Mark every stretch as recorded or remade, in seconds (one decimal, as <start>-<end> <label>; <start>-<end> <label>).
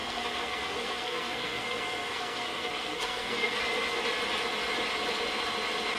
0.0-3.6 remade; 3.6-6.0 recorded